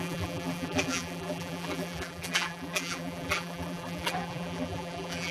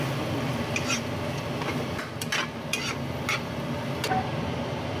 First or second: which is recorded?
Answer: second